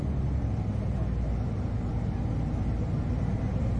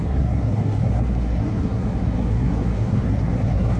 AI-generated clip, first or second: second